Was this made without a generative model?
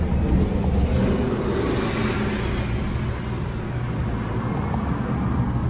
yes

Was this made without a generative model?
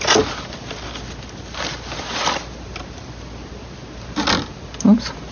yes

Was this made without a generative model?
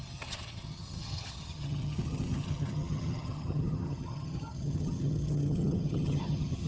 no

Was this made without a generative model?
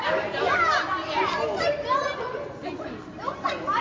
yes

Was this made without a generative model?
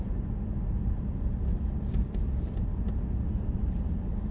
yes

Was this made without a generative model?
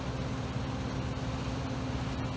yes